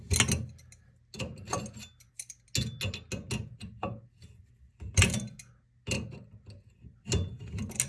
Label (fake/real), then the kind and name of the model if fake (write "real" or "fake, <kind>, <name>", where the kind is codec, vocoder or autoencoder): real